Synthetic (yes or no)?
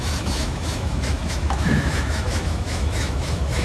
yes